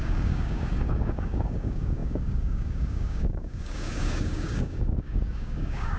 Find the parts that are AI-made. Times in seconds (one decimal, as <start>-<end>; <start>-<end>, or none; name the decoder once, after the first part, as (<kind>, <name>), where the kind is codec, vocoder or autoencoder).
0.0-6.0 (codec, DAC)